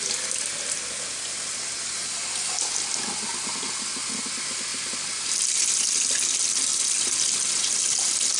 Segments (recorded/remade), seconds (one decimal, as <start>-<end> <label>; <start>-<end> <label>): 0.0-8.4 recorded